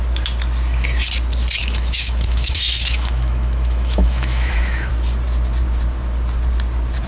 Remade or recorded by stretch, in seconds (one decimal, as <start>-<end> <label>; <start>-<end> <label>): 0.0-1.6 recorded; 1.6-4.9 remade; 4.9-7.1 recorded